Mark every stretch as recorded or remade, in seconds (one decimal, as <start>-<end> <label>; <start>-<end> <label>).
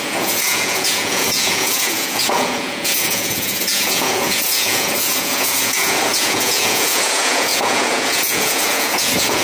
0.0-9.4 remade